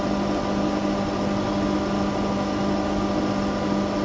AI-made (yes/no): no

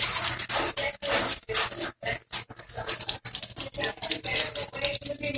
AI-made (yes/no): no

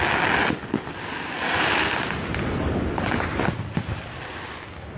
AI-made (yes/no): no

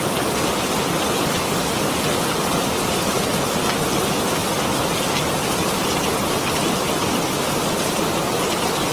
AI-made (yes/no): no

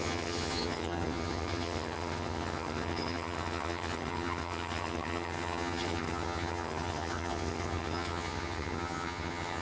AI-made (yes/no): yes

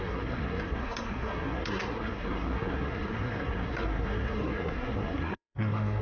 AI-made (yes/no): yes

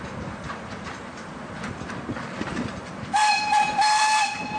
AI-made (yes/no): yes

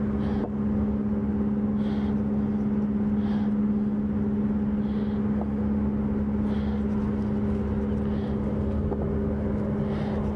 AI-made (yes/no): no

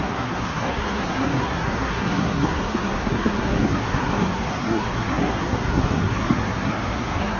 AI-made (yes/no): yes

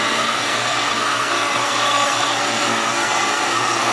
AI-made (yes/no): yes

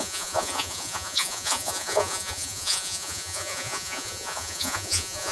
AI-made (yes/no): yes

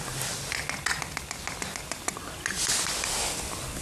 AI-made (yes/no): no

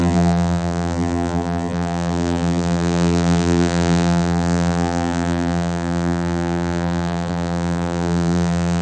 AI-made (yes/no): yes